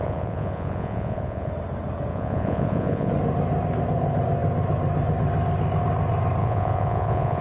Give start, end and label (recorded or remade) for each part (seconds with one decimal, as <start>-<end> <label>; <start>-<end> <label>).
0.0-1.5 remade; 1.5-2.1 recorded; 2.1-3.1 remade; 3.1-6.4 recorded; 6.4-7.4 remade

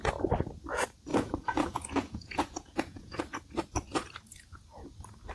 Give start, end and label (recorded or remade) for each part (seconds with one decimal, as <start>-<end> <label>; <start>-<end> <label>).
0.0-1.1 recorded; 1.1-3.2 remade; 3.2-5.3 recorded

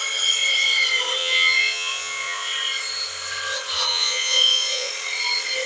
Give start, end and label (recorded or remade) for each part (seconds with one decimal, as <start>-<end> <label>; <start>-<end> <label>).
0.0-1.2 recorded; 1.2-2.5 remade; 2.5-3.9 recorded; 3.9-4.9 remade; 4.9-5.7 recorded

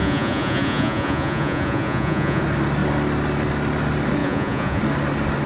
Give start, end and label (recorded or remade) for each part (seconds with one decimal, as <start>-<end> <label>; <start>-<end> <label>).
0.0-2.4 remade; 2.4-4.2 recorded; 4.2-4.8 remade; 4.8-5.5 recorded

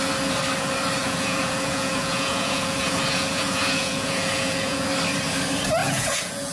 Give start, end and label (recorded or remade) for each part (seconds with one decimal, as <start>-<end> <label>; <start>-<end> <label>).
0.0-1.0 recorded; 1.0-4.9 remade; 4.9-5.8 recorded; 5.8-6.5 remade

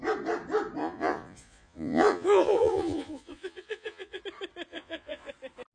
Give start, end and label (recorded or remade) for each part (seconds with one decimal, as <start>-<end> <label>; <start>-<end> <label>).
0.0-0.8 recorded; 0.8-4.2 remade; 4.2-4.7 recorded; 4.7-5.3 remade; 5.3-5.7 recorded